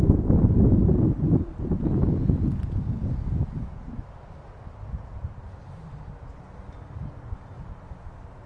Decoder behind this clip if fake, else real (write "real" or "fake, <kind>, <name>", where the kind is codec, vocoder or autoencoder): real